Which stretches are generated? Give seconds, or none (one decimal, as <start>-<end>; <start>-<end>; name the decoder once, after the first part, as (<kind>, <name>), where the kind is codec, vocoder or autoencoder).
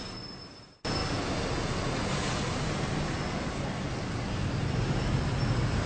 none